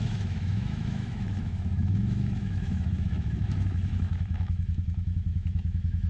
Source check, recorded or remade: remade